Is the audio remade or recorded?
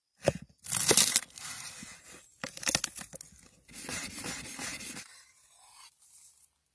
recorded